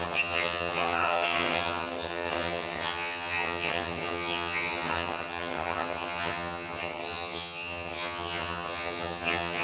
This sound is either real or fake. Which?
fake